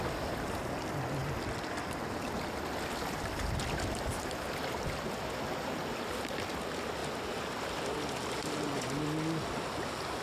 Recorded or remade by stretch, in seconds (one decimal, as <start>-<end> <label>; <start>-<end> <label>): 0.0-10.2 recorded